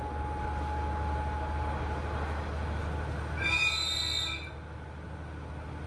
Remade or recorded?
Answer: recorded